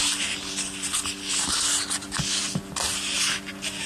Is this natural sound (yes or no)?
yes